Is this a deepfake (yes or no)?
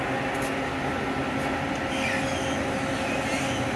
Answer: no